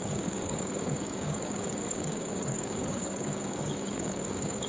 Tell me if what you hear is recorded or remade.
remade